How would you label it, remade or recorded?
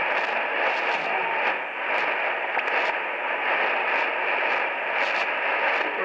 recorded